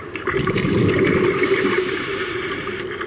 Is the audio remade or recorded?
remade